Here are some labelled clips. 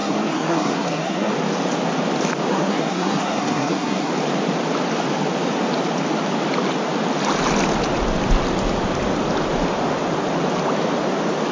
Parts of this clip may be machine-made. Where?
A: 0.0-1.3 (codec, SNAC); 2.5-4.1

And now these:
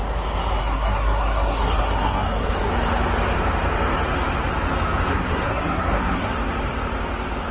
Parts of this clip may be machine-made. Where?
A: 0.6-2.7 (codec, SNAC); 5.1-6.3

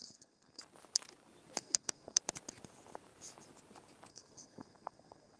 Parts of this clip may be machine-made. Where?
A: 0.0-0.6 (codec, SNAC); 1.6-2.2; 4.1-5.4

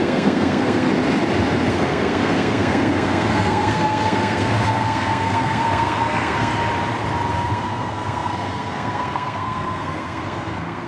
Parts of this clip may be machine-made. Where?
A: 0.0-0.9 (codec, SNAC); 1.7-6.5; 7.3-10.9

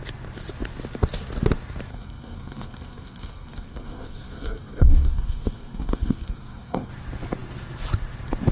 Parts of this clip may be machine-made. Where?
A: 1.9-6.9 (codec, SNAC)